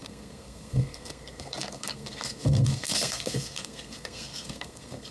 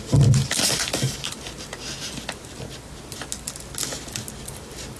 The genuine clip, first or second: second